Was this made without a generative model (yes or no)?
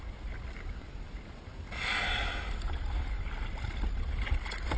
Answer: yes